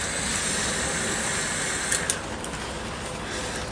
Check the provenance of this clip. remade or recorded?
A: recorded